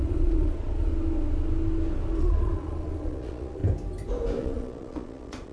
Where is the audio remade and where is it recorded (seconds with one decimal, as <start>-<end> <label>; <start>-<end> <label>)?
0.0-0.9 remade; 0.9-2.2 recorded; 2.2-3.6 remade; 3.6-4.4 recorded; 4.4-5.5 remade